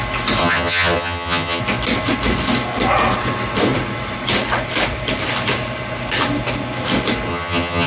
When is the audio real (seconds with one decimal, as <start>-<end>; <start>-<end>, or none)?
0.0-0.4; 1.6-7.3